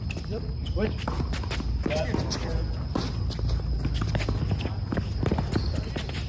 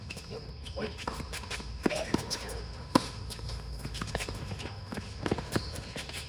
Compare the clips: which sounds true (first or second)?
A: first